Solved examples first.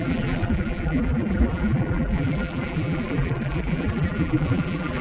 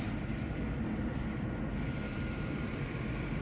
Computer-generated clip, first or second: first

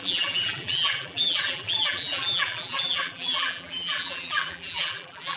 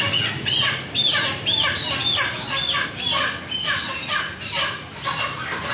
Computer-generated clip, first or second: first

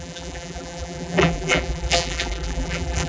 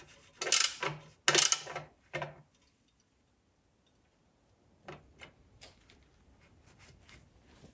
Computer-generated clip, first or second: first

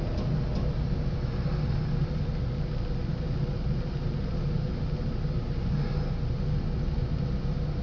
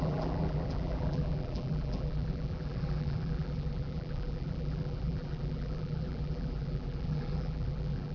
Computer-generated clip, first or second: second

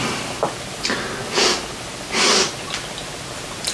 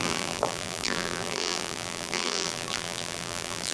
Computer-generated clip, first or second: second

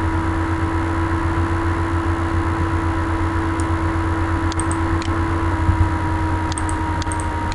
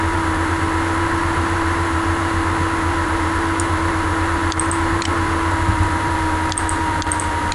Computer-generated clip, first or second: second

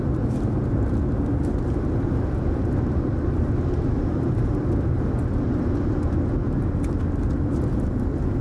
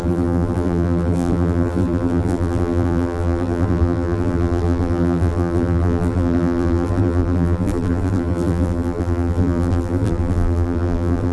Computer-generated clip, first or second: second